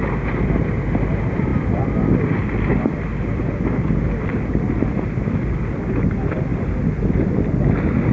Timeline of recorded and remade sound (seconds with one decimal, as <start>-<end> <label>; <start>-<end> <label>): 0.0-8.1 recorded